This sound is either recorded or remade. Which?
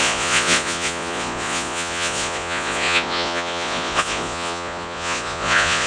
remade